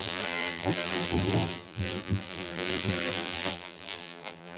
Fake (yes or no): yes